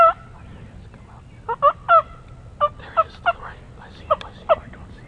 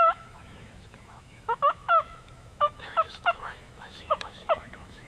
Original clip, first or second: first